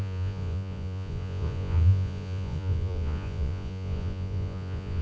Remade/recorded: remade